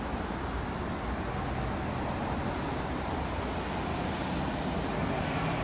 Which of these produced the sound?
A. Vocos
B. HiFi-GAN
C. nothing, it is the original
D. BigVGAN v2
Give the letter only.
C